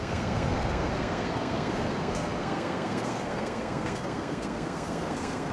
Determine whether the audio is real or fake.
fake